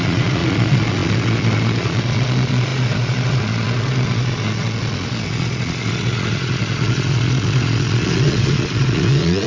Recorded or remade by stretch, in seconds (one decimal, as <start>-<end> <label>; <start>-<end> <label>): 0.0-9.5 remade

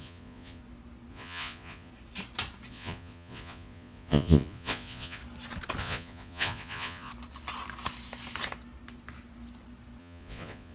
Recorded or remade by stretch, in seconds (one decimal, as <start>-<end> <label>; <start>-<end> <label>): 0.0-0.6 remade; 0.6-1.1 recorded; 1.1-1.9 remade; 1.9-2.7 recorded; 2.7-5.2 remade; 5.2-5.8 recorded; 5.8-7.1 remade; 7.1-10.0 recorded; 10.0-10.7 remade

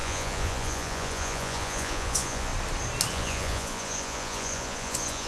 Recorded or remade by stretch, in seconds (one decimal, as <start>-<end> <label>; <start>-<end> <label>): 0.0-2.5 remade; 2.5-3.1 recorded; 3.1-5.3 remade

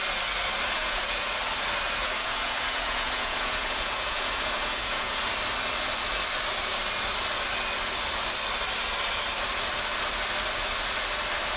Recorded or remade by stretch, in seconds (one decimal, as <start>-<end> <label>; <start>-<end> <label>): 0.0-0.8 recorded; 0.8-1.3 remade; 1.3-2.0 recorded; 2.0-5.2 remade; 5.2-11.6 recorded

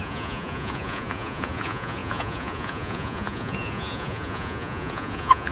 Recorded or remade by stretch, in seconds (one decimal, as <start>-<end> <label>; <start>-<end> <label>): 0.0-5.5 remade

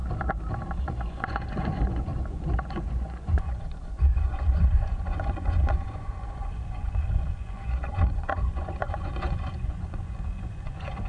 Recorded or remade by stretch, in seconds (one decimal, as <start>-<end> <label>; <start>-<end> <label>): 0.0-0.8 recorded; 0.8-11.1 remade

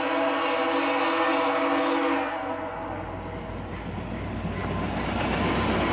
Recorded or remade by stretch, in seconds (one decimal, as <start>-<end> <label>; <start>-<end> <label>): 0.0-5.9 recorded